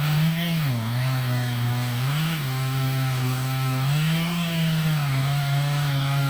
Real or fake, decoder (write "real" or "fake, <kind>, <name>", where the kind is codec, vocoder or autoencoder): fake, codec, DAC